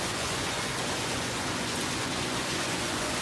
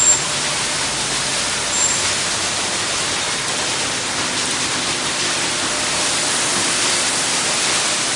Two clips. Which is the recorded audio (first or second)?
second